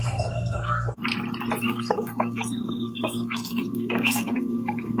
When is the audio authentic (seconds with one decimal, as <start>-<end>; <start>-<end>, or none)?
1.0-1.6